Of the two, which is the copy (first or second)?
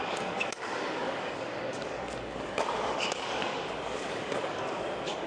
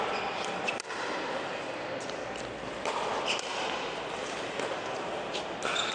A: first